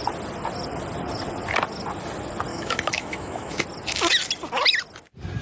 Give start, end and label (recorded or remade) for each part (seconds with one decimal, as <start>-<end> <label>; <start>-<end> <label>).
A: 0.0-2.5 recorded; 2.5-3.6 remade; 3.6-5.4 recorded